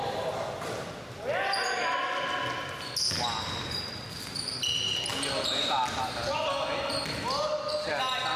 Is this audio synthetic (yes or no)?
no